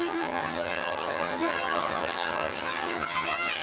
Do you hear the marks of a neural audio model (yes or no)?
yes